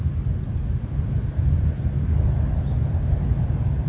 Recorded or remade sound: recorded